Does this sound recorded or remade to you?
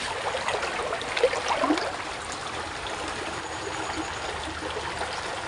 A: recorded